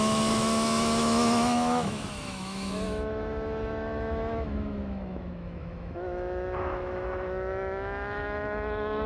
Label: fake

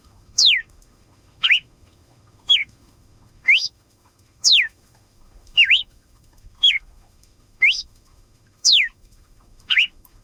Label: fake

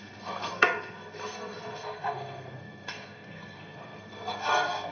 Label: fake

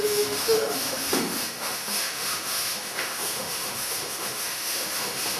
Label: fake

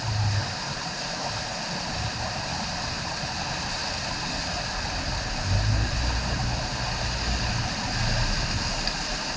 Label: real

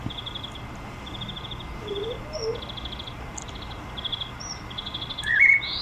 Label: real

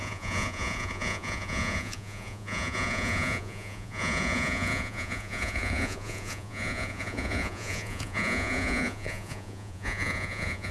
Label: fake